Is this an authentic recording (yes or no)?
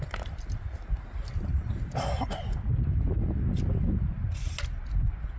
yes